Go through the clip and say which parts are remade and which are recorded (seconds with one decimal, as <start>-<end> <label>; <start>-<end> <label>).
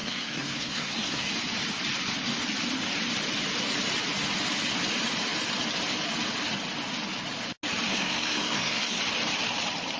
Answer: 0.0-1.3 remade; 1.3-7.9 recorded; 7.9-9.0 remade; 9.0-10.0 recorded